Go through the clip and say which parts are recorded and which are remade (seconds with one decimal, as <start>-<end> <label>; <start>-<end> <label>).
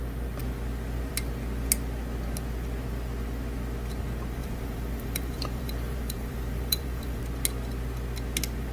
0.0-4.4 recorded; 4.4-7.2 remade; 7.2-8.7 recorded